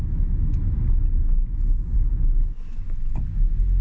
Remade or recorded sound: recorded